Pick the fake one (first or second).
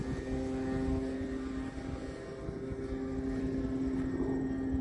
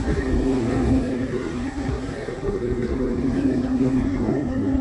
second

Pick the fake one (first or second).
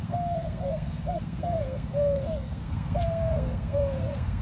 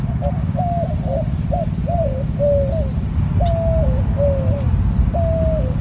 first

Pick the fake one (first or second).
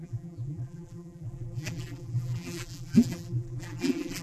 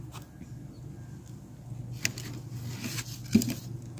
first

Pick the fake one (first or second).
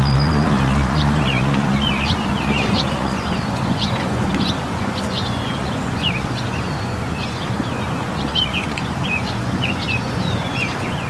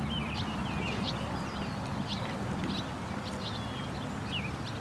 first